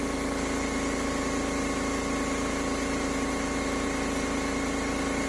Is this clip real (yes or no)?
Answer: yes